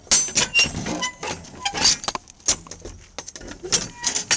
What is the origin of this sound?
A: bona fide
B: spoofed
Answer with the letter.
A